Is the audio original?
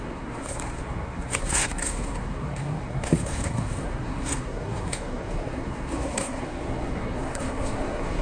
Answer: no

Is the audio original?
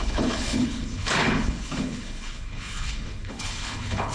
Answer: no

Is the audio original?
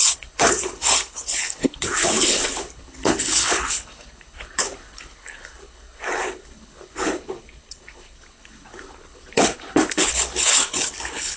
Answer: no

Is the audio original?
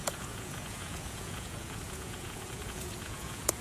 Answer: no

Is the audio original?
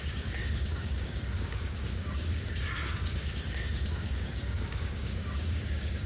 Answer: no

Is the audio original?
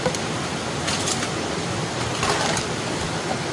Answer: yes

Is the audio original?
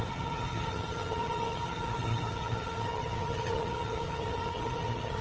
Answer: no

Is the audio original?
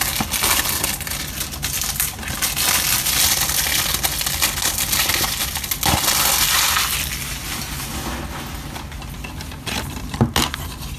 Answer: yes